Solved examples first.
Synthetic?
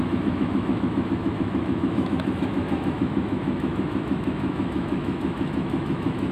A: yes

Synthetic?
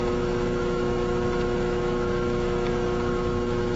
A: yes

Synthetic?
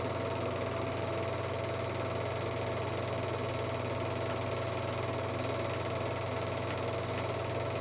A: no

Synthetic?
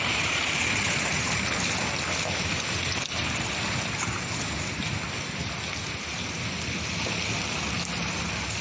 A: no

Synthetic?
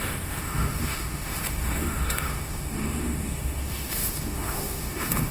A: yes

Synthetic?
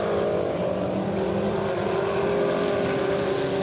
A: no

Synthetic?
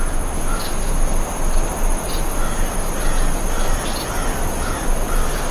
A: no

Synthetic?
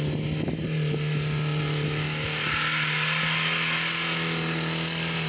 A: no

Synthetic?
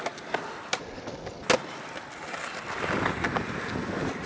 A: no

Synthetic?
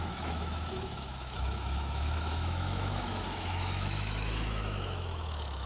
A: yes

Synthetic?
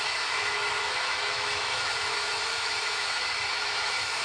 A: yes